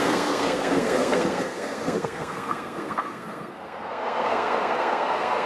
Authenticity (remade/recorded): remade